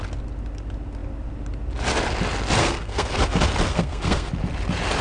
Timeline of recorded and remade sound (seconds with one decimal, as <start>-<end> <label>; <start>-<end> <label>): 0.0-2.6 recorded; 2.6-3.3 remade; 3.3-3.7 recorded; 3.7-4.3 remade; 4.3-5.0 recorded